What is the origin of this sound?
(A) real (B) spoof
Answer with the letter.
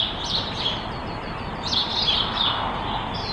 A